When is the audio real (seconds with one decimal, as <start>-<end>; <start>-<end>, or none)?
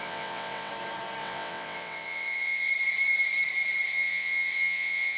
0.7-1.2; 2.7-3.9